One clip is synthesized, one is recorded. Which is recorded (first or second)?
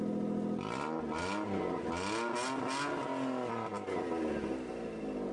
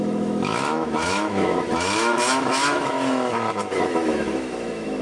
first